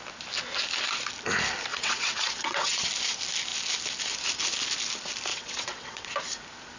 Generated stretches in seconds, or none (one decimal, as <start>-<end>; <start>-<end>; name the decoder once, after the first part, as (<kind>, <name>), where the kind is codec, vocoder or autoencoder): 1.7-2.9 (vocoder, WaveNeXt); 5.3-6.1